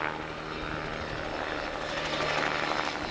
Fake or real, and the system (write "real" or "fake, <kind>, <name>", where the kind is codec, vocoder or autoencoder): real